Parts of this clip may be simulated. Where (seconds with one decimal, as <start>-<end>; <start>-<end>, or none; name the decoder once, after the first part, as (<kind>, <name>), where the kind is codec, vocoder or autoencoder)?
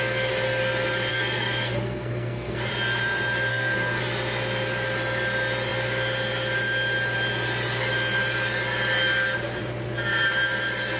1.1-2.7 (codec, SNAC); 3.5-4.0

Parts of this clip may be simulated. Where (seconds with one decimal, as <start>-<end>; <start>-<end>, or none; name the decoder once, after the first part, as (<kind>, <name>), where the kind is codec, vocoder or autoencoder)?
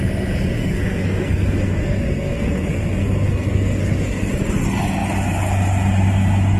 0.6-4.3 (codec, SNAC)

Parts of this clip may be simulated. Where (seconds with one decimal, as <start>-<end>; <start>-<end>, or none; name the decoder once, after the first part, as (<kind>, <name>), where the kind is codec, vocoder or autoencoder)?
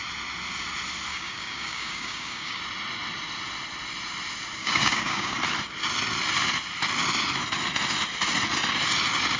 1.1-2.6 (codec, DAC); 4.6-5.4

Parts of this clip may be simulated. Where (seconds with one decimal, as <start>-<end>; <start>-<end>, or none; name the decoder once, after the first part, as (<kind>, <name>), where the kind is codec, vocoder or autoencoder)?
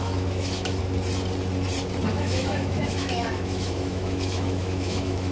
0.0-0.8 (autoencoder, DAC-VAE); 2.1-5.3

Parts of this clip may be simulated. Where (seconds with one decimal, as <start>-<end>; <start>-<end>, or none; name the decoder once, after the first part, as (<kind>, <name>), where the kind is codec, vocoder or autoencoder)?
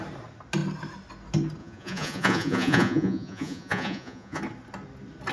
1.6-4.4 (vocoder, Vocos)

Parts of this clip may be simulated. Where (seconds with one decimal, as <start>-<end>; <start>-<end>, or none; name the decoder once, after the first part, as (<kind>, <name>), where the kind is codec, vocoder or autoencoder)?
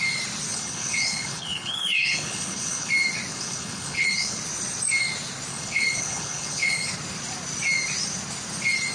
0.5-2.9 (codec, HILCodec); 3.3-4.4; 5.5-6.9